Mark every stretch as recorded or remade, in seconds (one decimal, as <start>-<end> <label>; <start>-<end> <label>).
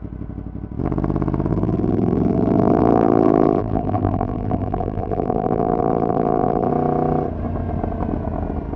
0.0-1.5 recorded; 1.5-6.7 remade; 6.7-8.8 recorded